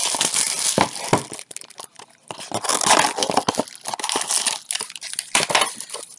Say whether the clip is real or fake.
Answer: real